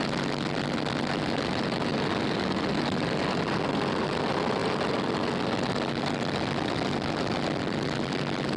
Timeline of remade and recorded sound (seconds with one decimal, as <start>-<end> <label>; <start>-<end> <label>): 0.0-8.6 recorded